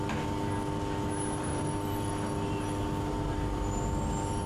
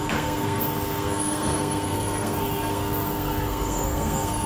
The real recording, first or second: first